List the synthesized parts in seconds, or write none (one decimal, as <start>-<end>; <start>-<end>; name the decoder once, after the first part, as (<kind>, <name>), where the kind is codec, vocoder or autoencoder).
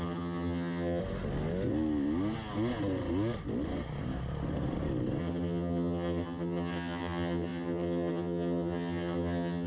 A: 0.0-1.0 (vocoder, HiFi-GAN); 5.2-9.7